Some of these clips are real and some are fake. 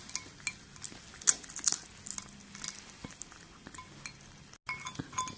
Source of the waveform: real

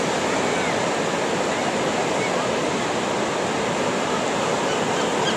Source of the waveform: real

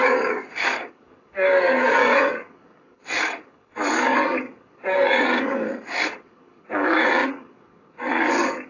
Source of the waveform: fake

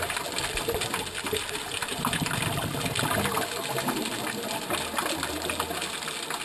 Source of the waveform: real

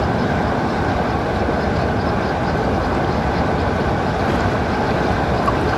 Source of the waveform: real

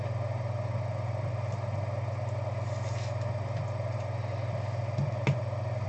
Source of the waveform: real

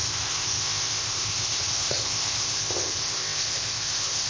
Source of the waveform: fake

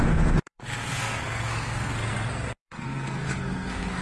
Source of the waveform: fake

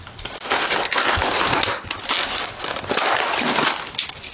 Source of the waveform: real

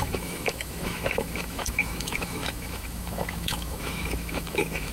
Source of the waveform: fake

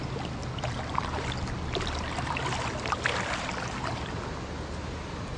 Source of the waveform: real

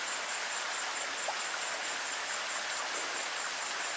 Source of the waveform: real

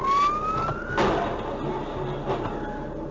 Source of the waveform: real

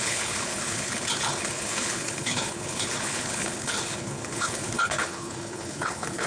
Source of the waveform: fake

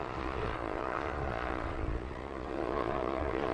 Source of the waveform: fake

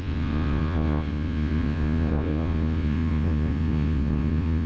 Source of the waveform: fake